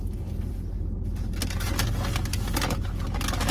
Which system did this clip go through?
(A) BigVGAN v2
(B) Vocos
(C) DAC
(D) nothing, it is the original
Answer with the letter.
D